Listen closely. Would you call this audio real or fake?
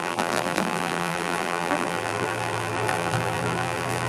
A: fake